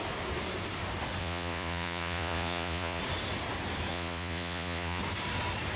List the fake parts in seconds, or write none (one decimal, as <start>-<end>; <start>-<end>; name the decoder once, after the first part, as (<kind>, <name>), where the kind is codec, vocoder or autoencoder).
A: 1.2-3.0 (vocoder, Vocos); 3.9-5.0